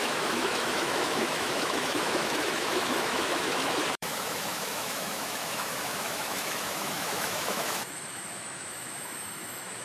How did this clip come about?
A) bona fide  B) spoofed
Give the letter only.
B